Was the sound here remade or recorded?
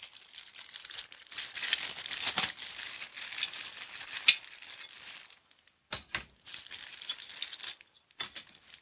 recorded